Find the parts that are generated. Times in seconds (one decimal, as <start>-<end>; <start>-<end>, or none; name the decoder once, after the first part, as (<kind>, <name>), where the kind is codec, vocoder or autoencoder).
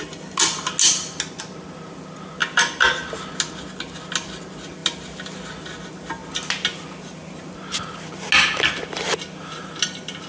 2.4-3.1 (vocoder, BigVGAN v2)